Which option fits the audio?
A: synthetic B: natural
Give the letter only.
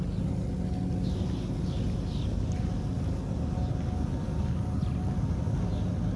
B